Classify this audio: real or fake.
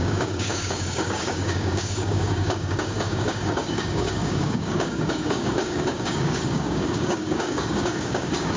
fake